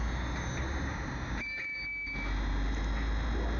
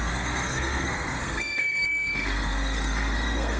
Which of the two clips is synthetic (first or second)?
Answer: second